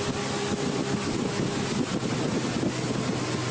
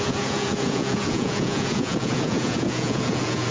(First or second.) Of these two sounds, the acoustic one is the first